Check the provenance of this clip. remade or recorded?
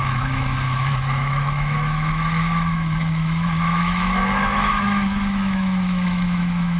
remade